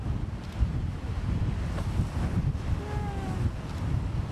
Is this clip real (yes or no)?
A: yes